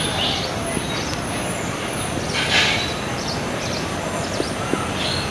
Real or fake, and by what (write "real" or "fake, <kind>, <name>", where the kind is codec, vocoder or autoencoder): real